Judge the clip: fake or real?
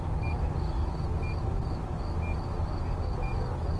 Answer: real